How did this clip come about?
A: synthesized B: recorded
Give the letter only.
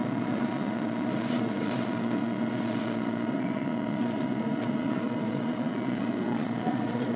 A